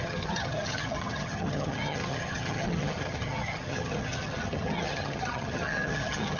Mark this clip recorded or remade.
remade